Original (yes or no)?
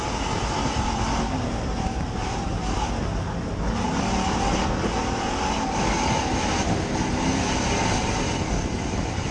yes